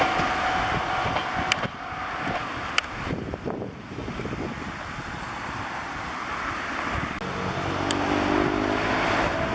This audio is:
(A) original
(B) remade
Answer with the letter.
A